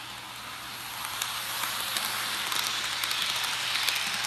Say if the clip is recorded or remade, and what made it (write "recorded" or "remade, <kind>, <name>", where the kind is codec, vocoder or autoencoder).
recorded